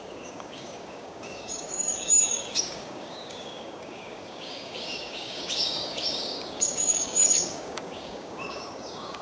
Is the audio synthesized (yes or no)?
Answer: yes